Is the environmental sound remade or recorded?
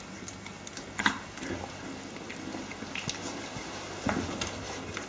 recorded